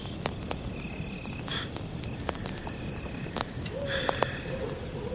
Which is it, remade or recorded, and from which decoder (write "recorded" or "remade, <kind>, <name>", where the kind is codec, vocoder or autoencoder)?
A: recorded